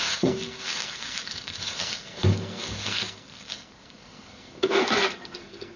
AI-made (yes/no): yes